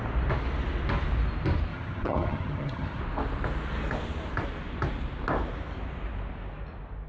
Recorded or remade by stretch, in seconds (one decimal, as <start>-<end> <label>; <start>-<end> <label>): 0.0-1.7 recorded; 1.7-3.0 remade; 3.0-7.1 recorded